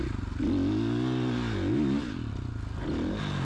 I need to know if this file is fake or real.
real